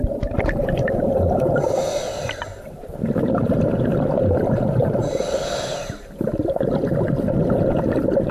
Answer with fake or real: real